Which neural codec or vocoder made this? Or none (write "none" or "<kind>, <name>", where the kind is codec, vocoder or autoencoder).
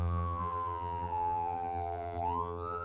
vocoder, BigVGAN v2